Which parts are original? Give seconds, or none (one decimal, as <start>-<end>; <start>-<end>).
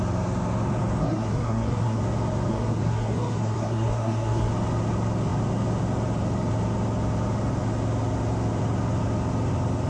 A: 0.0-1.0; 2.0-2.5; 4.5-9.9